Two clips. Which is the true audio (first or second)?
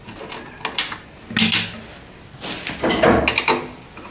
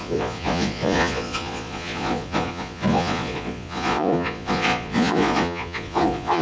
first